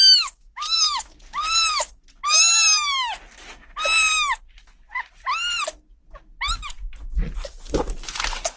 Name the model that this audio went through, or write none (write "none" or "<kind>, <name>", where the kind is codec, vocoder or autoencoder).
none